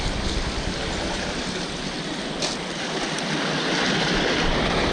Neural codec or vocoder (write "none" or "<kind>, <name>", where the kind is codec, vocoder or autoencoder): none